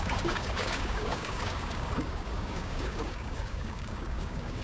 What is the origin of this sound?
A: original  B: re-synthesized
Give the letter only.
B